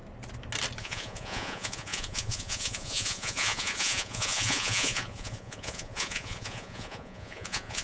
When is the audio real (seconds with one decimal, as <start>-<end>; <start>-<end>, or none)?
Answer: 0.0-0.8